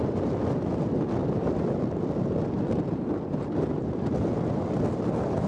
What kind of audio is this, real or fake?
real